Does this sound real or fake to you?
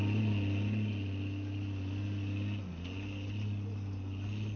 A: real